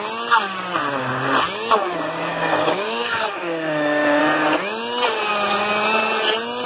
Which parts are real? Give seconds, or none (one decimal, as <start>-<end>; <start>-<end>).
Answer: 0.0-2.3; 4.2-6.7